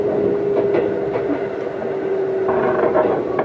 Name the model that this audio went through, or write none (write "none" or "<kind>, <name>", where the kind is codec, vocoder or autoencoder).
none